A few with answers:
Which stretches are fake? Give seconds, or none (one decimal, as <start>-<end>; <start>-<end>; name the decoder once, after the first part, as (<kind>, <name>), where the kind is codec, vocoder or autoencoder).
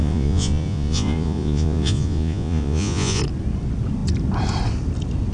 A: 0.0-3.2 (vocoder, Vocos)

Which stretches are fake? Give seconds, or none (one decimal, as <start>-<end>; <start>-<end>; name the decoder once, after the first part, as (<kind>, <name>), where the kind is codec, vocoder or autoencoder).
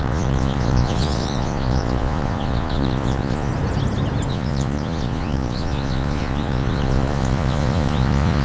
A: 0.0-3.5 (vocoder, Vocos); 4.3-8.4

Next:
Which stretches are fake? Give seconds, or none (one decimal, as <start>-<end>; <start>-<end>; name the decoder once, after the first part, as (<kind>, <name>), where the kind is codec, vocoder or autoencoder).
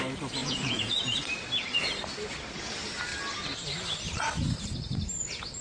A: 0.4-1.2 (vocoder, Vocos)